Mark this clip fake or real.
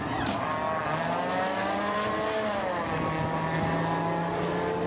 real